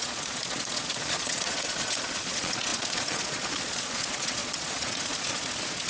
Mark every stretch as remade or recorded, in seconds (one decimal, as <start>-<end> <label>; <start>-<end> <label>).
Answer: 0.0-5.9 remade